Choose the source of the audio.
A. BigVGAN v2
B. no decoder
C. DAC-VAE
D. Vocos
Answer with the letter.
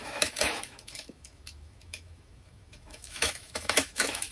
C